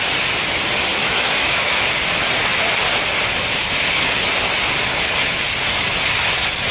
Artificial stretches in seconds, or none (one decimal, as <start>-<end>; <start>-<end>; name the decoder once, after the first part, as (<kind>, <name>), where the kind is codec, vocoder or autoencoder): 1.0-1.8 (autoencoder, DAC-VAE)